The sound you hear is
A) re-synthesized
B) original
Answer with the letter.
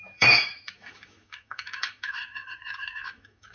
A